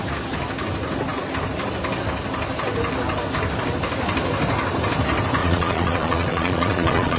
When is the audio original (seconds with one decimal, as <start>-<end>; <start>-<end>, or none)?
0.0-5.4